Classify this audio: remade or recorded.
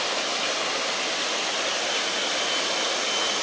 recorded